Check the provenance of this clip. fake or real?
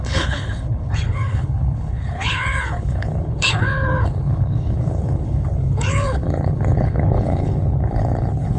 fake